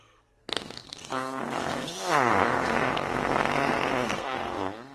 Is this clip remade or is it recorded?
remade